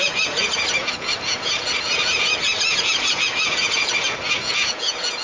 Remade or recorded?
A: remade